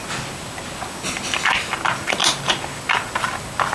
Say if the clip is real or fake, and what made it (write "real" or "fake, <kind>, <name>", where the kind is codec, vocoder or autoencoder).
real